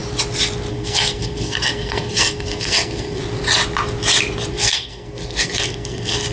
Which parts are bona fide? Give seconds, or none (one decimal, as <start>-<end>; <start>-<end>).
0.0-0.7; 3.2-4.5